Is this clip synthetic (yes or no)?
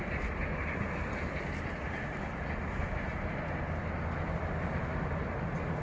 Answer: no